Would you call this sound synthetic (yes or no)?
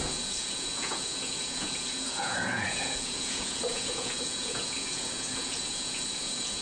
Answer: yes